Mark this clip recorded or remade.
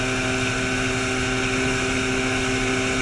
recorded